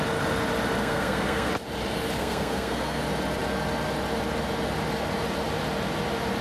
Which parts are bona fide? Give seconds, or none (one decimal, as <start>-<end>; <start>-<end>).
0.0-0.8; 1.5-2.2; 3.0-6.4